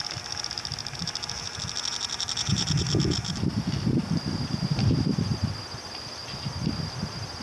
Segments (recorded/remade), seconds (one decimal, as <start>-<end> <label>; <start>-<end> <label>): 0.0-7.4 recorded